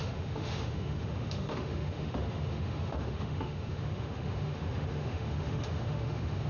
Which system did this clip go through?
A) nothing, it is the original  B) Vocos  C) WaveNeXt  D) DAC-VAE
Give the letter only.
D